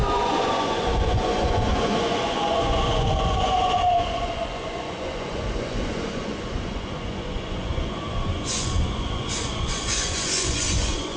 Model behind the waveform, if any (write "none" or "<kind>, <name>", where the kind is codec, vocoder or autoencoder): vocoder, Vocos